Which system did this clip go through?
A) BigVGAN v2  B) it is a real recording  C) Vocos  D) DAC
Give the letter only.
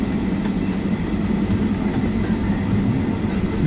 B